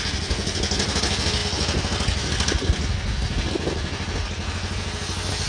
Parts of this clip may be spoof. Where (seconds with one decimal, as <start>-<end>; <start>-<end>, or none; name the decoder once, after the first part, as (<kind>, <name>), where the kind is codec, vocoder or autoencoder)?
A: none